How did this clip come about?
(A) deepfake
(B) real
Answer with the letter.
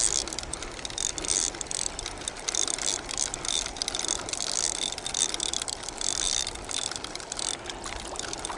B